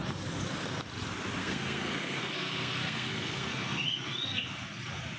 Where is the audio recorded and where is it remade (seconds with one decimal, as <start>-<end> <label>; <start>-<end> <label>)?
0.0-1.4 recorded; 1.4-4.5 remade; 4.5-5.2 recorded